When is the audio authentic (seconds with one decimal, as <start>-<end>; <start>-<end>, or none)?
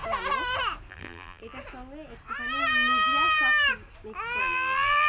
0.0-0.9; 1.4-4.4